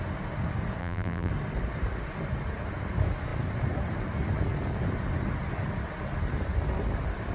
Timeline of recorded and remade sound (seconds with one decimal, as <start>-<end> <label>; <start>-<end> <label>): 0.0-0.8 recorded; 0.8-1.3 remade; 1.3-7.3 recorded